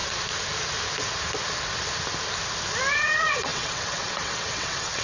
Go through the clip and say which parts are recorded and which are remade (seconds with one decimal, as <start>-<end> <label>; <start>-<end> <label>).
0.0-2.9 recorded; 2.9-5.0 remade

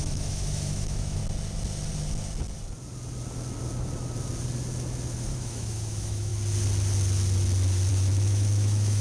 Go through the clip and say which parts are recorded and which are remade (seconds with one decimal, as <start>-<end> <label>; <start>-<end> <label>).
0.0-1.2 remade; 1.2-5.2 recorded; 5.2-6.3 remade; 6.3-7.9 recorded; 7.9-9.0 remade

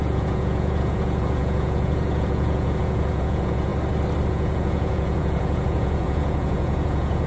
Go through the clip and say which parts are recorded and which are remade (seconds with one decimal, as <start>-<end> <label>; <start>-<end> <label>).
0.0-3.7 remade; 3.7-4.3 recorded; 4.3-7.3 remade

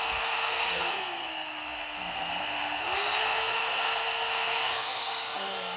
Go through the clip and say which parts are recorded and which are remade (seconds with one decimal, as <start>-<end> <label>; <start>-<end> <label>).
0.0-5.8 remade

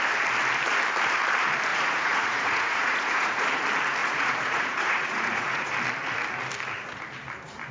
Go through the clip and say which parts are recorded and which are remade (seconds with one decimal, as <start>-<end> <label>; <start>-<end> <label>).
0.0-1.7 recorded; 1.7-3.4 remade; 3.4-4.0 recorded; 4.0-5.7 remade; 5.7-7.7 recorded

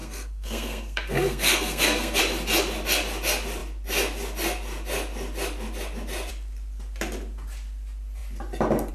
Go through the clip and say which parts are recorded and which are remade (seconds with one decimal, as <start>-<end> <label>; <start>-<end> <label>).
0.0-2.2 remade; 2.2-8.9 recorded

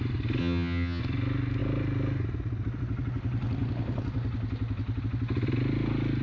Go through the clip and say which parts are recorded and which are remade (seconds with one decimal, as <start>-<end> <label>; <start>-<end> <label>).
0.0-0.4 recorded; 0.4-1.0 remade; 1.0-6.2 recorded

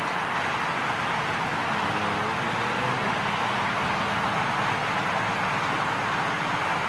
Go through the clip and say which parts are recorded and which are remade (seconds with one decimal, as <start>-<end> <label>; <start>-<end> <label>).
0.0-6.9 recorded